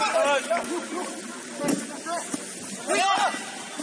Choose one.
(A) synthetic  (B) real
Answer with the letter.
B